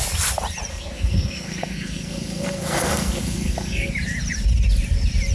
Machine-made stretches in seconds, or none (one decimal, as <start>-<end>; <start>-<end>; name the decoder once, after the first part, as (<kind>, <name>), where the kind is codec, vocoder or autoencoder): 0.7-3.9 (codec, SNAC)